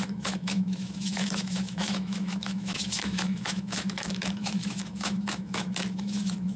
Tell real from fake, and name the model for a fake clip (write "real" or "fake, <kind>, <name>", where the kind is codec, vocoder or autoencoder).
fake, autoencoder, DAC-VAE